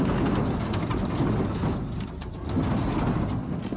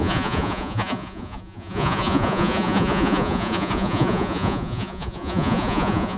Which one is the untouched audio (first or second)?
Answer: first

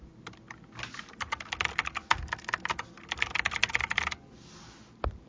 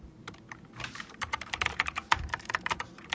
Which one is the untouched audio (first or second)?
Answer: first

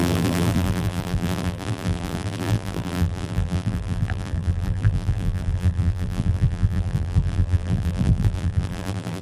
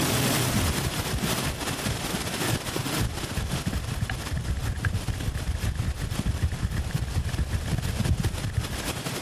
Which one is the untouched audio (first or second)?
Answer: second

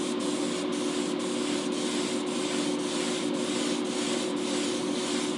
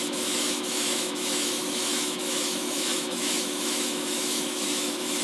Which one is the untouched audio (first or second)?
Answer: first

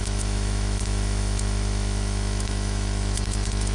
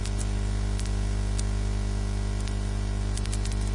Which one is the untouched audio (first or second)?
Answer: second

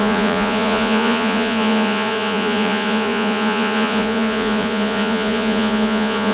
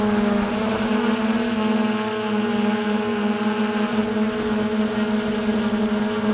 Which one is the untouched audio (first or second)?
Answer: second